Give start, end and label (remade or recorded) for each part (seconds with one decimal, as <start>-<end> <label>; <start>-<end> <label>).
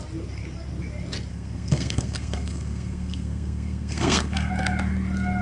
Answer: 0.0-1.3 recorded; 1.3-4.5 remade; 4.5-5.4 recorded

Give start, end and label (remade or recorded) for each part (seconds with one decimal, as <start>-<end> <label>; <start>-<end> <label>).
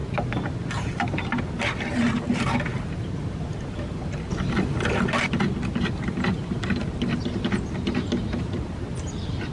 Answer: 0.0-9.5 recorded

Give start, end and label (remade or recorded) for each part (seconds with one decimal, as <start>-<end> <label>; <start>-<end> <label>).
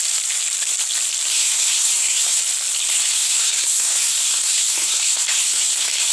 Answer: 0.0-1.3 recorded; 1.3-2.4 remade; 2.4-2.9 recorded; 2.9-6.1 remade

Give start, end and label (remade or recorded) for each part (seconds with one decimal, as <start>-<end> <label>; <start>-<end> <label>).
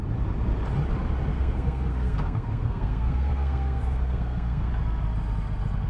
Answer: 0.0-1.3 recorded; 1.3-4.7 remade; 4.7-5.9 recorded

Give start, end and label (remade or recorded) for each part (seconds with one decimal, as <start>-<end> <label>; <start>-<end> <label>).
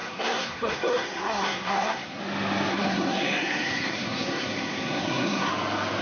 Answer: 0.0-2.2 remade; 2.2-2.7 recorded; 2.7-5.5 remade; 5.5-6.0 recorded